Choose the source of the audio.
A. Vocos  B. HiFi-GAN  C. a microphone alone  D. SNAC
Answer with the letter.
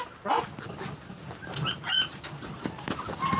C